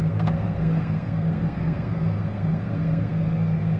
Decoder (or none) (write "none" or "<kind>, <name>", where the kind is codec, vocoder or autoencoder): codec, SNAC